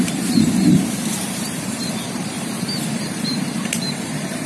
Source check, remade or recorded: remade